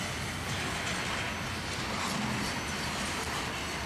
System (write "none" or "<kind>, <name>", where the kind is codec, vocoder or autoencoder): none